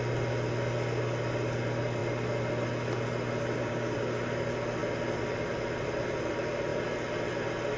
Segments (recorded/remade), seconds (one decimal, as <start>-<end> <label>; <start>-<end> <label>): 0.0-3.6 recorded; 3.6-4.2 remade; 4.2-7.8 recorded